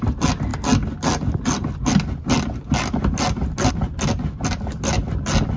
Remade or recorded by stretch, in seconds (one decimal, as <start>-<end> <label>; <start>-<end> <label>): 0.0-5.6 recorded